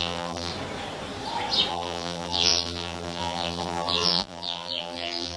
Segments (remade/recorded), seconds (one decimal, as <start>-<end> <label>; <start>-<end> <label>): 0.0-0.5 remade; 0.5-1.7 recorded; 1.7-5.4 remade